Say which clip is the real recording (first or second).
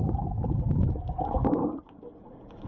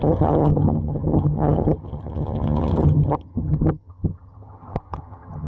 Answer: first